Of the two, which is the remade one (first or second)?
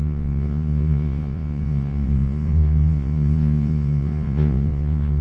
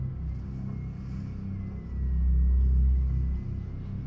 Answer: first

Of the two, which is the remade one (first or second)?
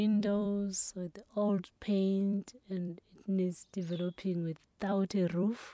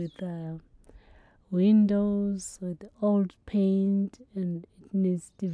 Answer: first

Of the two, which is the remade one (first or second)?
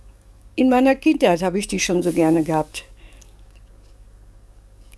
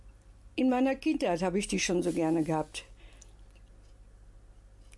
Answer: first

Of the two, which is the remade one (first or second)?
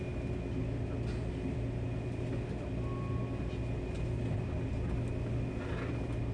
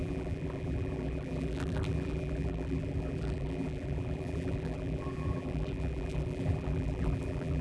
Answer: second